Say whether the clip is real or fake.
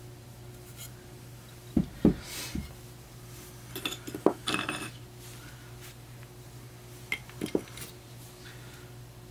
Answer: real